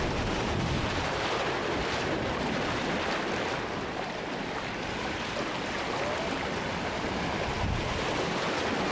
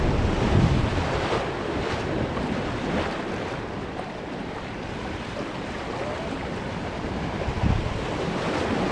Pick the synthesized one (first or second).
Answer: second